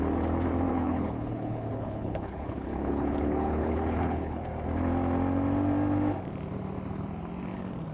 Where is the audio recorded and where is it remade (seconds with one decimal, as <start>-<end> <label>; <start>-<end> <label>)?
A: 0.0-0.7 recorded; 0.7-4.4 remade; 4.4-7.9 recorded